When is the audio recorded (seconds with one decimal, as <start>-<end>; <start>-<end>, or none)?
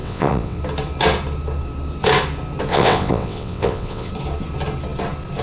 0.6-2.7; 4.1-5.4